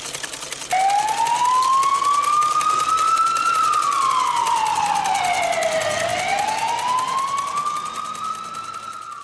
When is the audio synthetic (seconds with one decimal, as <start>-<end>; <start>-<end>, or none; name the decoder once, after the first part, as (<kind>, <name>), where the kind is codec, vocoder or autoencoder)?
none